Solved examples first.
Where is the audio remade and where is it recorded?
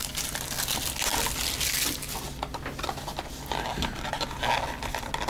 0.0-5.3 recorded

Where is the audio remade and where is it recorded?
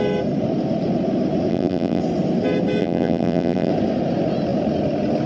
0.0-1.5 recorded; 1.5-2.0 remade; 2.0-2.8 recorded; 2.8-3.7 remade; 3.7-5.3 recorded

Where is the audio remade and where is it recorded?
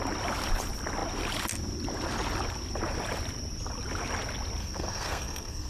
0.0-4.6 recorded; 4.6-5.7 remade